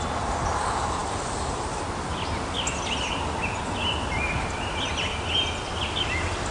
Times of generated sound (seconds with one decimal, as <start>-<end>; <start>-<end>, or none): none